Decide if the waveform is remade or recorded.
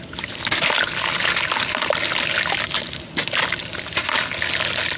recorded